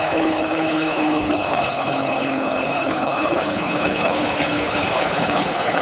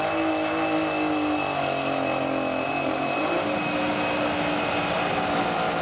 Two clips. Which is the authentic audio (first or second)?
second